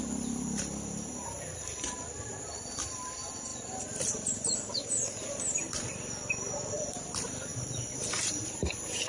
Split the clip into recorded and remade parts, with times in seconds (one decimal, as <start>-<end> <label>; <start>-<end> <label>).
0.0-9.1 remade